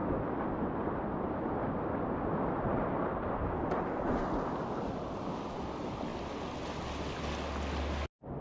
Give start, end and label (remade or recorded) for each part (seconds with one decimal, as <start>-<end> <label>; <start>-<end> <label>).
0.0-8.4 recorded